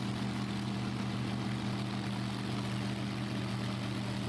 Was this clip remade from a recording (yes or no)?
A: no